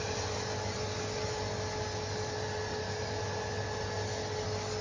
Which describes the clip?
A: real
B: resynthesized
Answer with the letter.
A